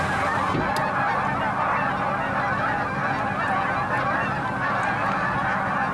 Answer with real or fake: real